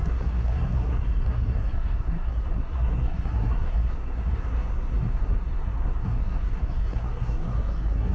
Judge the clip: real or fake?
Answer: fake